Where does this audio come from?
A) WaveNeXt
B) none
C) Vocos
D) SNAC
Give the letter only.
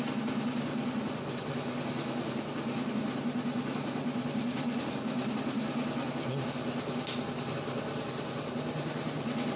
B